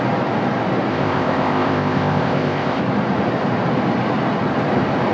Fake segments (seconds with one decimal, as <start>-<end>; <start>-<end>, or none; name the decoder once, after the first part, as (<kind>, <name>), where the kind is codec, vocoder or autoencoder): 0.9-2.8 (codec, ZipCodec)